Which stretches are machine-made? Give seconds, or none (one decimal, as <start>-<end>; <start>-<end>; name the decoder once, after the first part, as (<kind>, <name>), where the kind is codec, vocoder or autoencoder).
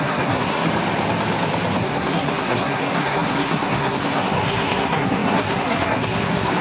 0.0-0.7 (codec, SNAC); 1.8-6.6